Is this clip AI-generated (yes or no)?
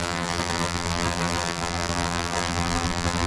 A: yes